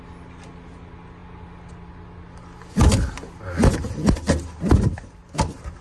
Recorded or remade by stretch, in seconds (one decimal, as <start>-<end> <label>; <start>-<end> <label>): 0.0-5.8 recorded